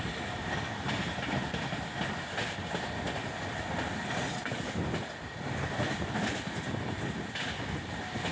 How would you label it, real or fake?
real